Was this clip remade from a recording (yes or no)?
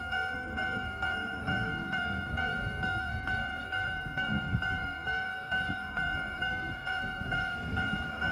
yes